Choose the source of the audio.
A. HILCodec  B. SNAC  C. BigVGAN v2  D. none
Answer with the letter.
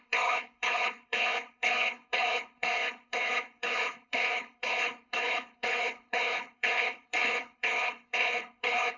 A